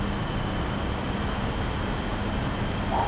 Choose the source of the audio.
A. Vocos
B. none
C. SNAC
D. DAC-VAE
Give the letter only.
B